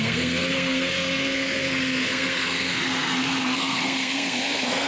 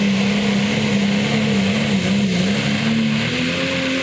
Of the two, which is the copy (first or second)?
first